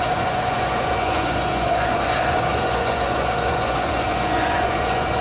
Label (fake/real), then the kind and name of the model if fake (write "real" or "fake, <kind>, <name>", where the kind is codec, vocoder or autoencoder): fake, vocoder, Vocos